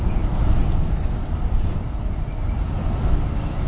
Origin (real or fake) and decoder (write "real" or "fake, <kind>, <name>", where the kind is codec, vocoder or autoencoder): real